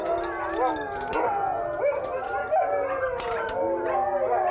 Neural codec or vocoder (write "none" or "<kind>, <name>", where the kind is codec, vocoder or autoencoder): none